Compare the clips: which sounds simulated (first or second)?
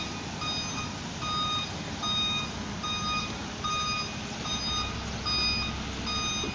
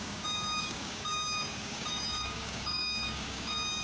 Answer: second